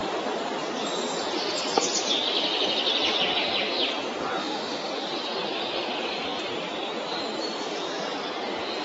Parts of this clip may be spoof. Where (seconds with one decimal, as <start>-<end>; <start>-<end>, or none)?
4.4-4.9